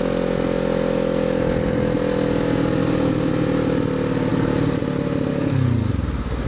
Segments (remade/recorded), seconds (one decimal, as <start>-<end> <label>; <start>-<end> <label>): 0.0-2.8 recorded; 2.8-3.3 remade; 3.3-4.3 recorded; 4.3-4.8 remade; 4.8-5.3 recorded; 5.3-5.9 remade; 5.9-6.5 recorded